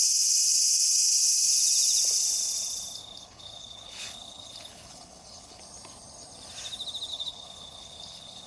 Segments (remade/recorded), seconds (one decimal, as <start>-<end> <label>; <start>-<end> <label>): 0.0-3.0 recorded; 3.0-5.6 remade; 5.6-7.1 recorded; 7.1-8.5 remade